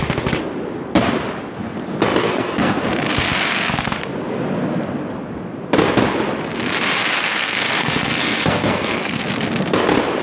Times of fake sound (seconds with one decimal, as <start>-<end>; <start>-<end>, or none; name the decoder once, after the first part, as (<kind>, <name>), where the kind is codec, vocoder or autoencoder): 2.2-2.8 (codec, SNAC); 7.4-9.2